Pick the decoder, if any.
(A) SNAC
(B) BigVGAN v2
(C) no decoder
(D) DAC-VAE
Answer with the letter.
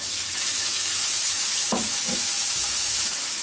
D